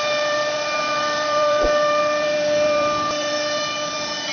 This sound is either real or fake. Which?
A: fake